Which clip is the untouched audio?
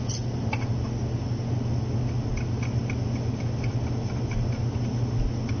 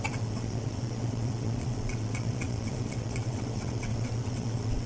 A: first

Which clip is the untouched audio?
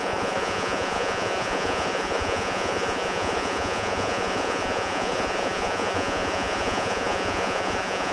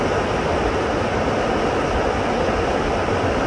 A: second